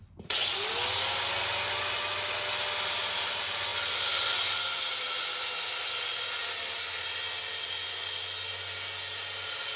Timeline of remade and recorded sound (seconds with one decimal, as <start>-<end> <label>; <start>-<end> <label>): 0.0-9.8 recorded